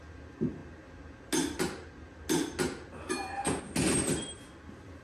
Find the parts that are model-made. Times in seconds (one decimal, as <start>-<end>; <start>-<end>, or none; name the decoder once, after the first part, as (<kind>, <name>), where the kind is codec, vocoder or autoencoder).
none